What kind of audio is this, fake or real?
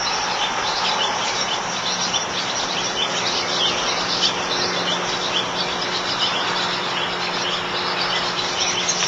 real